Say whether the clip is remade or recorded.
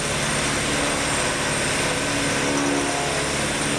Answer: recorded